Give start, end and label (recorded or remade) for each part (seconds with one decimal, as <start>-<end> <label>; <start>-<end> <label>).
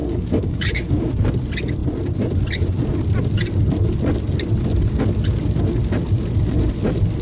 0.0-1.1 remade; 1.1-7.2 recorded